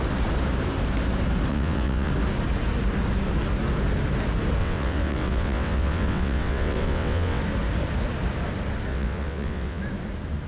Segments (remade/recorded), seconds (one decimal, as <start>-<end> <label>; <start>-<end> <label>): 0.0-1.5 recorded; 1.5-2.1 remade; 2.1-4.6 recorded; 4.6-7.4 remade; 7.4-8.9 recorded; 8.9-9.8 remade; 9.8-10.5 recorded